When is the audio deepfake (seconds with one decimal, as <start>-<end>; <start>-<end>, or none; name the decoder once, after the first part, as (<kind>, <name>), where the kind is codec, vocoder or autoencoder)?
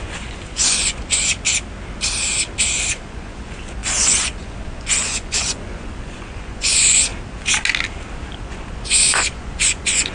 0.0-1.3 (vocoder, Vocos); 2.9-7.1; 8.4-10.1